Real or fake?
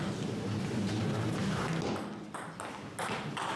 real